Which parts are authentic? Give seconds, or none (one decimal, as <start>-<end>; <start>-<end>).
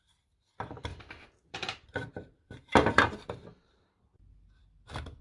0.0-0.9; 4.0-5.2